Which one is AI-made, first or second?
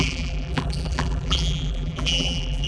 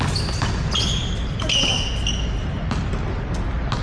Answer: first